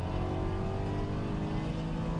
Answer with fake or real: real